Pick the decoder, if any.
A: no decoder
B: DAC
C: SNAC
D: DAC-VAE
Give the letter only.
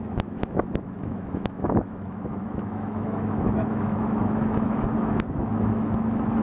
D